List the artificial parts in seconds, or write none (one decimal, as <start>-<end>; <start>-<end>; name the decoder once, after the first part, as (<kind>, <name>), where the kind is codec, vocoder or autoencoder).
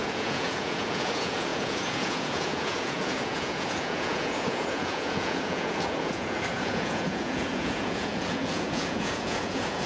0.0-9.9 (vocoder, Vocos)